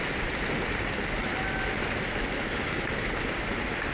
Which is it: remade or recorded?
recorded